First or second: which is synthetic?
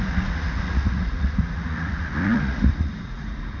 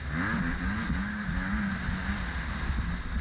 first